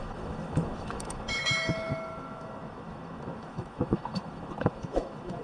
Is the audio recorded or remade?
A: remade